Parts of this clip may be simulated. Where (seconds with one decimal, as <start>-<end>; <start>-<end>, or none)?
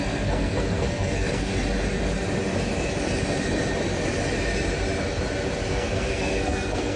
0.0-1.5; 5.7-7.0